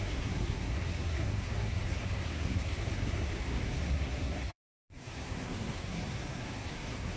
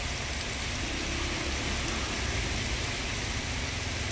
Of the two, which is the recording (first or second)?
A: second